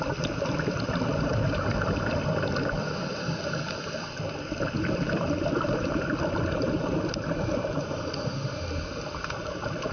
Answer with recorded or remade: remade